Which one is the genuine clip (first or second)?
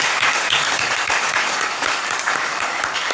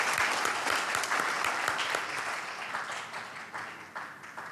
second